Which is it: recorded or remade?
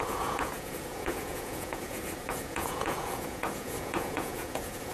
remade